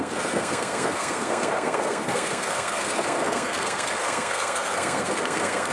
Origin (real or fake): fake